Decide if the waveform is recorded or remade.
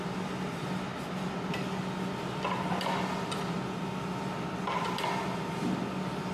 recorded